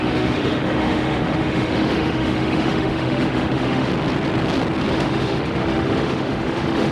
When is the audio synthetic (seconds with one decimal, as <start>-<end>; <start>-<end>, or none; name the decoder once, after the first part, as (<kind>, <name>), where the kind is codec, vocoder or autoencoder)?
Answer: 0.0-3.9 (autoencoder, DAC-VAE); 4.9-6.9